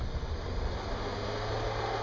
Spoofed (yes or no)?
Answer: no